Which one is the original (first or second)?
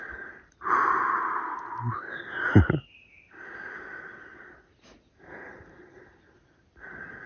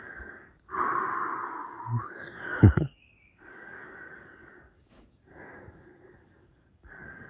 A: first